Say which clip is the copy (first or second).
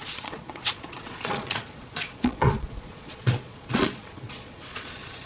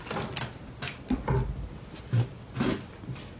first